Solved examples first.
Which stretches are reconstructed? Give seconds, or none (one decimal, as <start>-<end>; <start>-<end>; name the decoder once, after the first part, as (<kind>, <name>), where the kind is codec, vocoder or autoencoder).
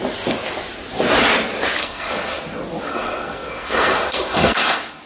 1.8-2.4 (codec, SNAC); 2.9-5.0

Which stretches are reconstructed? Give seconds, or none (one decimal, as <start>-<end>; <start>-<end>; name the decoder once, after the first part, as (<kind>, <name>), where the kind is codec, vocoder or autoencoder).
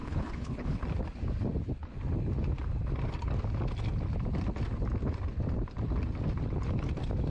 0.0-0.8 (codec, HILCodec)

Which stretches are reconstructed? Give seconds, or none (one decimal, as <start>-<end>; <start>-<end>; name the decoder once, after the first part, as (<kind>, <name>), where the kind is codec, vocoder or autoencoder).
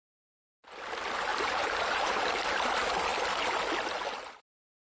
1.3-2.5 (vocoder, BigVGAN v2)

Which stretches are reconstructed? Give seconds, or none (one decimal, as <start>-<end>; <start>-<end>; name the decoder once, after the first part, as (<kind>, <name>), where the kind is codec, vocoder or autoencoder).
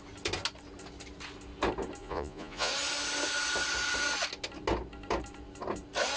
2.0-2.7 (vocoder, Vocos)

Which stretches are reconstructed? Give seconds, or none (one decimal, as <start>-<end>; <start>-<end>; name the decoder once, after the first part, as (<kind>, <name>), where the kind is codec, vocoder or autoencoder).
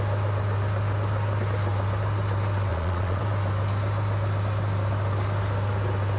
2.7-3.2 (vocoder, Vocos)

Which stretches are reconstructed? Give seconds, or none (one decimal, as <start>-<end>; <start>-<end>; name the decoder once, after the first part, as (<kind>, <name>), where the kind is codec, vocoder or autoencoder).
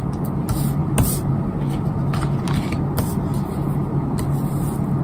none